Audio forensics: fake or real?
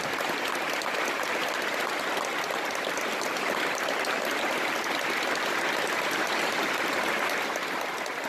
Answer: real